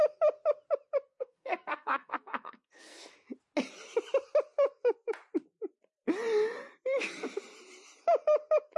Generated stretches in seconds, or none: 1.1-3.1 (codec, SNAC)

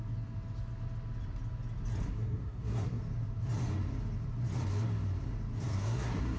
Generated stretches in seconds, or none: 2.0-3.0 (codec, SNAC); 5.7-6.4

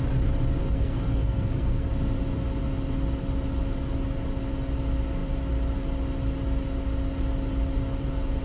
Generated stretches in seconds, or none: 0.6-1.9 (codec, SNAC)